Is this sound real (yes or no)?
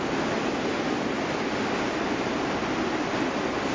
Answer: yes